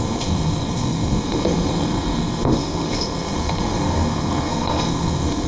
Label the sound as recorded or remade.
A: remade